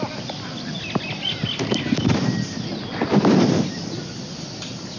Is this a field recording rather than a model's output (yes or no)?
yes